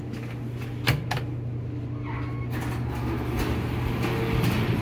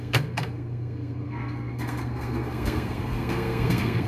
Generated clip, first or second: second